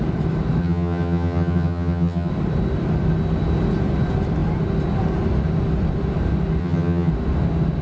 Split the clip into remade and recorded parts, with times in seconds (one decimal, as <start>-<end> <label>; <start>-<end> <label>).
0.0-0.6 recorded; 0.6-2.3 remade; 2.3-6.6 recorded; 6.6-7.1 remade; 7.1-7.8 recorded